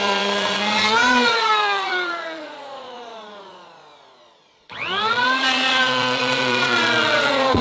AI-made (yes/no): yes